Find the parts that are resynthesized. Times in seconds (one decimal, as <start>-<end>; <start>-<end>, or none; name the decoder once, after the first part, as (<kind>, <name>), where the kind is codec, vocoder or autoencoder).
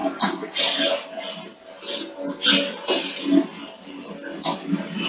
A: none